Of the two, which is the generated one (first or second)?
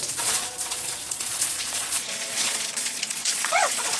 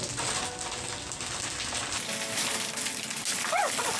first